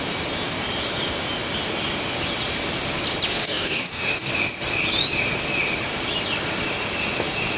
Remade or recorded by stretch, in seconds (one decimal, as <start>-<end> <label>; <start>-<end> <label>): 0.0-3.3 recorded; 3.3-4.3 remade; 4.3-7.6 recorded